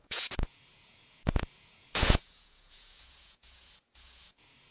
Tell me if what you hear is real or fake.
fake